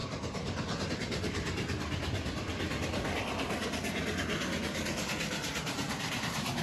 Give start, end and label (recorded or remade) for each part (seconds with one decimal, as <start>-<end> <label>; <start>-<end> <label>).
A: 0.0-0.9 remade; 0.9-5.4 recorded; 5.4-6.6 remade